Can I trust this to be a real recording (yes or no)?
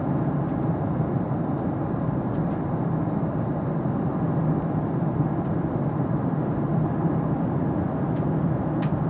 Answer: no